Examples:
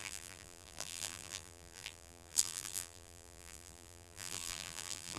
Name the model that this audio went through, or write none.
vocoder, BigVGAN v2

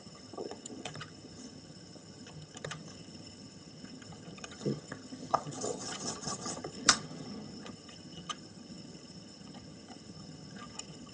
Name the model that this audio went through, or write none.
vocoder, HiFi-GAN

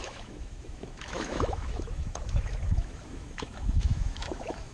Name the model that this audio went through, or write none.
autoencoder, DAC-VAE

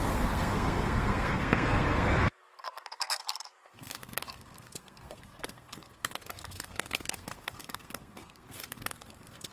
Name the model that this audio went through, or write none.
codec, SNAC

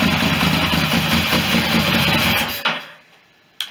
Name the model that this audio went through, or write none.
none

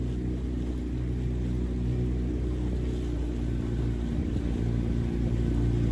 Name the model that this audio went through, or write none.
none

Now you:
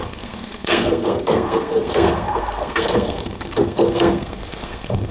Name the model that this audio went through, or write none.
codec, SNAC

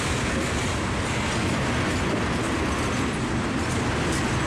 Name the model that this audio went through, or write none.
none